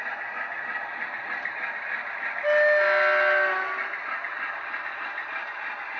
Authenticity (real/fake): real